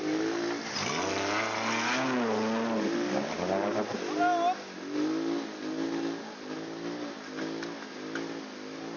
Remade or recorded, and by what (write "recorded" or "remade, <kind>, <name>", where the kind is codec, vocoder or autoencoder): recorded